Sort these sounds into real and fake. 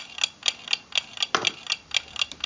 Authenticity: real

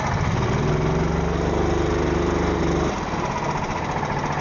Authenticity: real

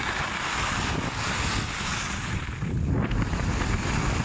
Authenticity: real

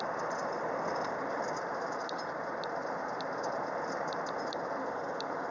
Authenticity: real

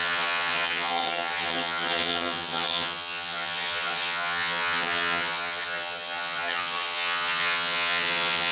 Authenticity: fake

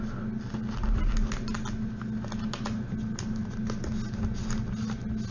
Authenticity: real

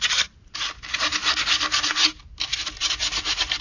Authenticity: real